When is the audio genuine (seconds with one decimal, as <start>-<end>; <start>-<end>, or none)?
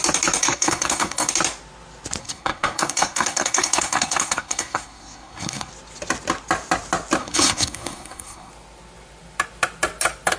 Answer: 0.0-0.4; 1.3-2.2; 5.7-7.2; 8.5-10.4